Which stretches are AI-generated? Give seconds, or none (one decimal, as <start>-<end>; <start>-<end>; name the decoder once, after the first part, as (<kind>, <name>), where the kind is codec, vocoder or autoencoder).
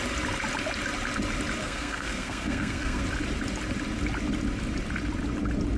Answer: 1.6-3.0 (codec, SNAC)